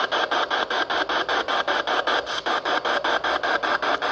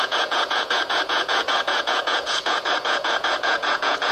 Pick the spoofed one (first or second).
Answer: second